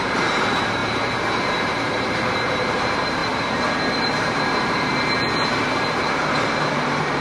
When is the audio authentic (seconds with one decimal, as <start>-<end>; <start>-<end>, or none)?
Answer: none